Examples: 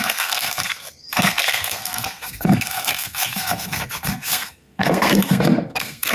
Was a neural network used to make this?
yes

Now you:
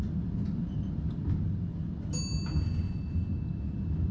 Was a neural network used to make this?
no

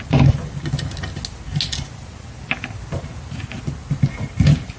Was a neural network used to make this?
no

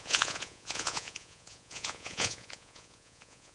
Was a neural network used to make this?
yes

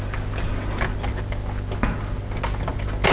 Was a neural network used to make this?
no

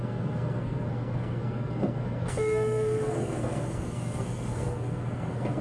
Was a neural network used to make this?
yes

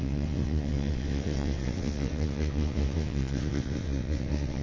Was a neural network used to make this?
yes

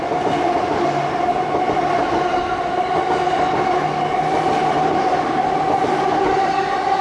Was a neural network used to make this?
no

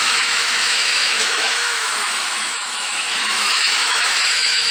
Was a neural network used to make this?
yes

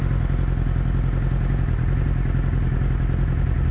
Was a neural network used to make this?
no